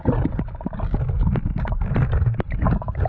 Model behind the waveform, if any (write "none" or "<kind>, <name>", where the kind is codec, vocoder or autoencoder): none